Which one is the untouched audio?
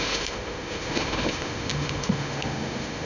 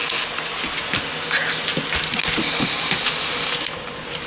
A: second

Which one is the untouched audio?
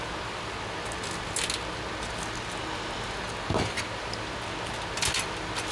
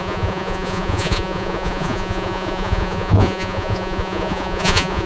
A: first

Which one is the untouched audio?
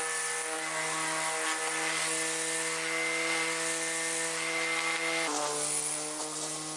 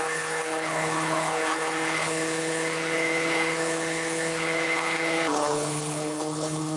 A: first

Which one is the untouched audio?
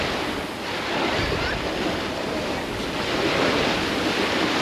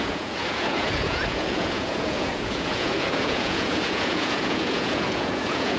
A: first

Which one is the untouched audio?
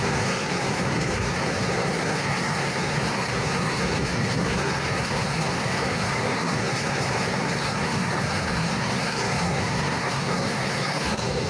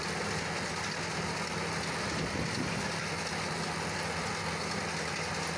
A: second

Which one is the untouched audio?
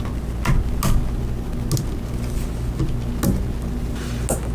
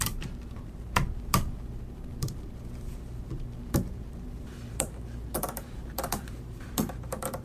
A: first